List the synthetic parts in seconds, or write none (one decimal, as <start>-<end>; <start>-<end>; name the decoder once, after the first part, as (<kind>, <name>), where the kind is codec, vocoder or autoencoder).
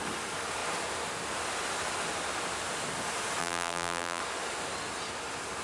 3.4-4.2 (vocoder, BigVGAN v2)